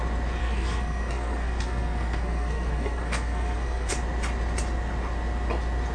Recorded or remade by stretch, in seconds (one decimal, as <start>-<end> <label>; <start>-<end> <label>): 0.0-0.4 recorded; 0.4-3.9 remade; 3.9-5.9 recorded